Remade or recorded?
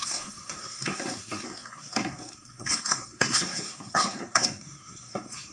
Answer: remade